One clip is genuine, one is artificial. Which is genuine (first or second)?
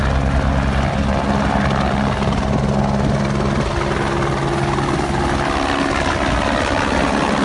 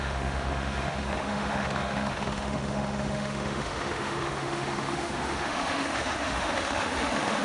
first